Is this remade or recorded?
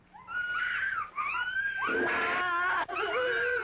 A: recorded